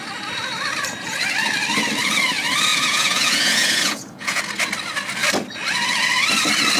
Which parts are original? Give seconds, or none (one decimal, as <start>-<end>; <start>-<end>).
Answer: 0.0-2.7; 4.4-6.8